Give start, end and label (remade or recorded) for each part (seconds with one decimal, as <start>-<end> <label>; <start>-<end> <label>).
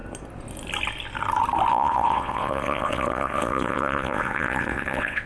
0.0-1.7 recorded; 1.7-5.3 remade